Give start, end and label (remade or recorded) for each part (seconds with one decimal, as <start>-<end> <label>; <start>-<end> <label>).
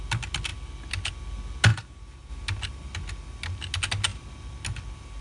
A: 0.0-1.7 recorded; 1.7-2.3 remade; 2.3-5.2 recorded